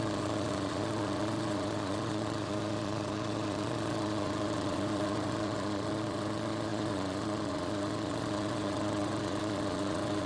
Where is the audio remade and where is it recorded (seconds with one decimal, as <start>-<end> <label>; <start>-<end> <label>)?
0.0-10.3 remade